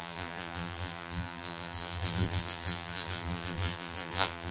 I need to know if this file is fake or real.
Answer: fake